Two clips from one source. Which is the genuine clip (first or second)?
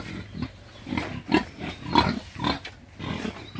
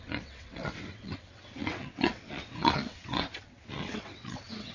first